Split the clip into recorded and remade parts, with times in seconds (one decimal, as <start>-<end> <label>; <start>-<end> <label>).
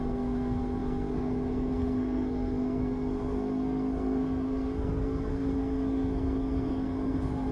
0.0-7.5 remade